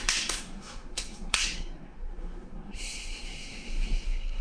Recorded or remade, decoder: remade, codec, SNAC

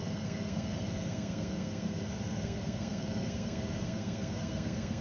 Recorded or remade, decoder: remade, codec, SNAC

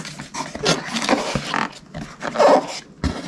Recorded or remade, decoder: recorded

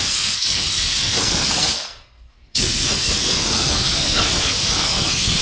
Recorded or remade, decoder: remade, codec, SNAC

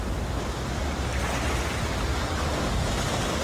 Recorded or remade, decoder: recorded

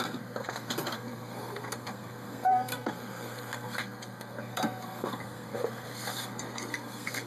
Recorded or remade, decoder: remade, codec, SNAC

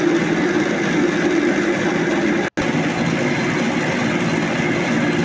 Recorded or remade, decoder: recorded